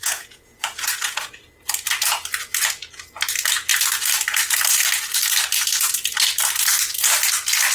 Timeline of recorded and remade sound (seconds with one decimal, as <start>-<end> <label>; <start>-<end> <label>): 0.0-1.3 remade; 1.3-7.7 recorded